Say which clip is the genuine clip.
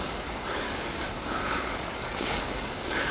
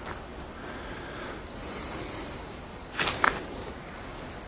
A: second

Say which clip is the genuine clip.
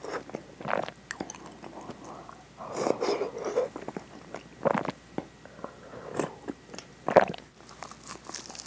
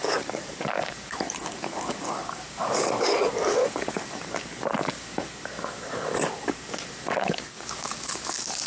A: first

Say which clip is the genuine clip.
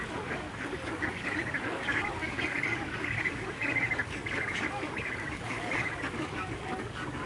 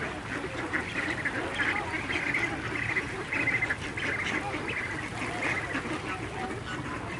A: second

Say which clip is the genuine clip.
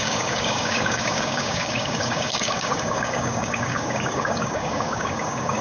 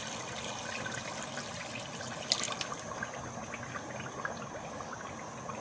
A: second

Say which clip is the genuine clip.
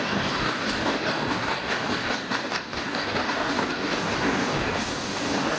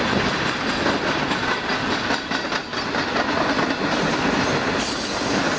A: second